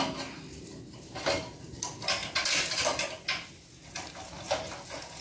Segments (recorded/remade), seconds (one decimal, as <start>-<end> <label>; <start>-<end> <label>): 0.0-5.2 recorded